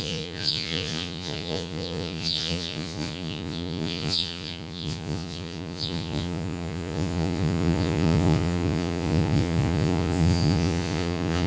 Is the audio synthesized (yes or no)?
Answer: yes